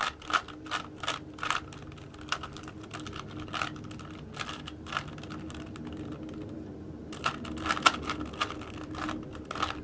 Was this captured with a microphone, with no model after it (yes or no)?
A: yes